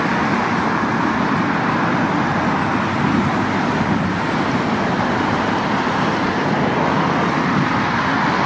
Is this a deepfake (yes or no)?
no